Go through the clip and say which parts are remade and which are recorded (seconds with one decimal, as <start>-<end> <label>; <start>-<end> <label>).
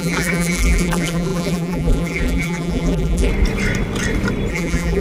0.0-3.3 remade; 3.3-4.5 recorded; 4.5-5.0 remade